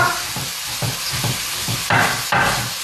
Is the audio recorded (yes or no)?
yes